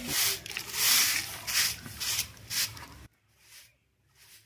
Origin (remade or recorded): recorded